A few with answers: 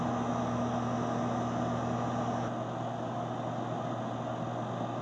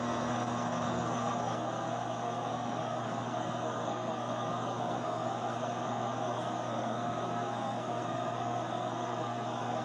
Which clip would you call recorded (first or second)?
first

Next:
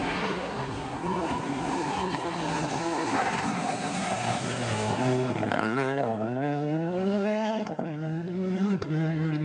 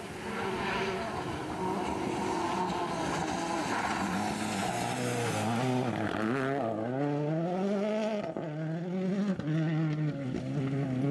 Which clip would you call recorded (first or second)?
second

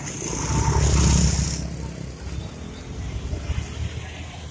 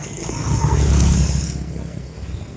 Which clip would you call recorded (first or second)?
first